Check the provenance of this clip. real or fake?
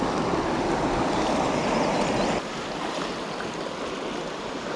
real